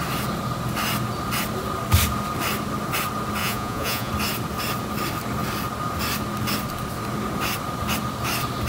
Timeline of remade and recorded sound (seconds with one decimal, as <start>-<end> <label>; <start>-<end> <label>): 0.0-3.4 recorded; 3.4-4.1 remade; 4.1-8.7 recorded